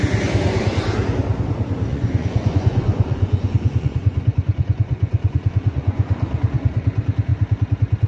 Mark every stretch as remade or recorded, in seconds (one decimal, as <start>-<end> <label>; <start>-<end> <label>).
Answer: 0.0-1.9 recorded; 1.9-6.8 remade; 6.8-8.1 recorded